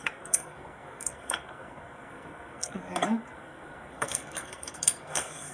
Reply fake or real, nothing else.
fake